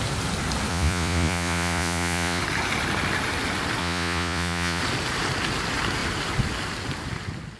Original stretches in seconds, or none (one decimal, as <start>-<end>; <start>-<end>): 0.0-0.7; 2.4-3.8; 4.8-7.6